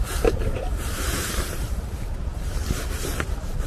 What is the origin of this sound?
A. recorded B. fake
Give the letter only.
B